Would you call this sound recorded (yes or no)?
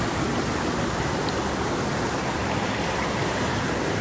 yes